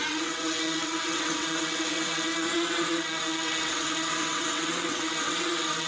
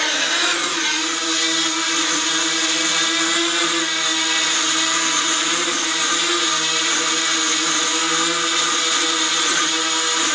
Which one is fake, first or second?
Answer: first